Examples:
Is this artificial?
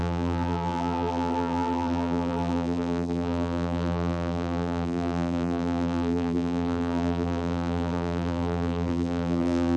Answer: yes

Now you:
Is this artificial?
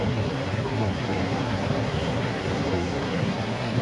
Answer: yes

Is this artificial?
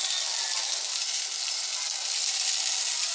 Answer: no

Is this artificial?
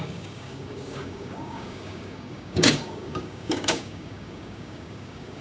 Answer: yes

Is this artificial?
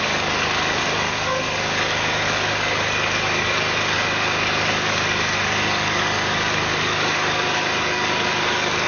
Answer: yes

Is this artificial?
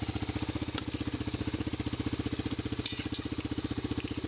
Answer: no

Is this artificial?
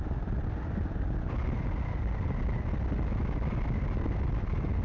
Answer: no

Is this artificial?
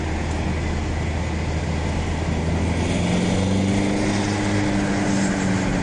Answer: no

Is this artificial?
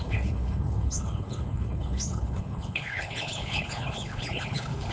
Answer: yes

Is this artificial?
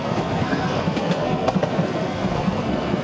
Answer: yes